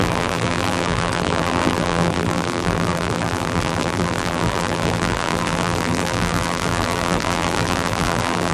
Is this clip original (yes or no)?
no